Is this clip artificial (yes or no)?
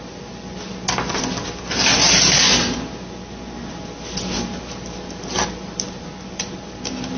no